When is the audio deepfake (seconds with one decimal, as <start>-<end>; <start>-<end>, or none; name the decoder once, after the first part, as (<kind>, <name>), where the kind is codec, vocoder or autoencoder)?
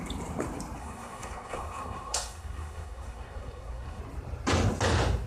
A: 0.8-4.0 (codec, SNAC)